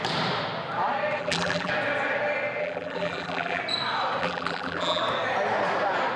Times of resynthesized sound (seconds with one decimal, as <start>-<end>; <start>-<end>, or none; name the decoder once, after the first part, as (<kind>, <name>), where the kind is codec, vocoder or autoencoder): 1.2-1.7 (vocoder, BigVGAN v2); 2.6-3.6; 4.2-5.0